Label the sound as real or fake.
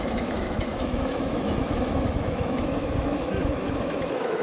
fake